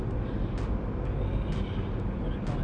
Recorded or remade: recorded